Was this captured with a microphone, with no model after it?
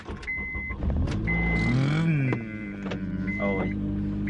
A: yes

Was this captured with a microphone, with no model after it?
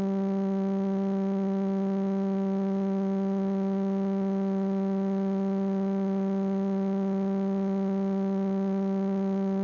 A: yes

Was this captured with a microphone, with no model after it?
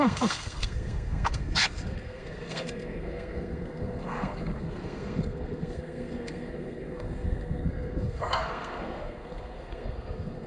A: no